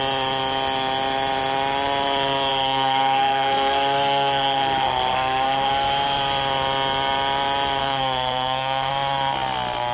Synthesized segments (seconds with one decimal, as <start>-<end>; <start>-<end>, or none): 2.5-5.7; 7.8-8.9